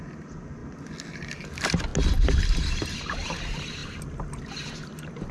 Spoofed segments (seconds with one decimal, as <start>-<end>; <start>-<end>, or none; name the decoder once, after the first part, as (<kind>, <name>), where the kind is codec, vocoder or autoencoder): 0.0-0.6 (vocoder, BigVGAN v2); 1.1-1.9; 3.0-3.8; 4.4-5.3